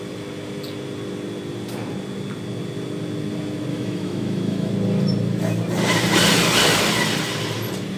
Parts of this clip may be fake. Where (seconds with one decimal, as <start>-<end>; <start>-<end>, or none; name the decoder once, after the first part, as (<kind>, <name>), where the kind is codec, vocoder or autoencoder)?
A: 3.7-4.7 (autoencoder, DAC-VAE)

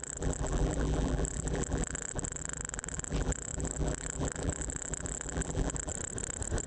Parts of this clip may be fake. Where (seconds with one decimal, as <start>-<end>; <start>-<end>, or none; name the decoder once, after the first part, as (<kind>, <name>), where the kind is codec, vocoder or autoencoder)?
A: 0.0-5.9 (vocoder, BigVGAN v2)